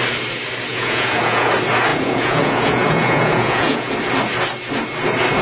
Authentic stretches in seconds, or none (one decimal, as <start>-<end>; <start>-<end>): 0.0-0.7; 1.5-1.9; 3.9-5.4